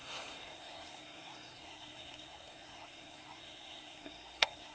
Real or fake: fake